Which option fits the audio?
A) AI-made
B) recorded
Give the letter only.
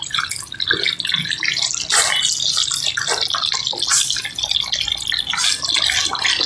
B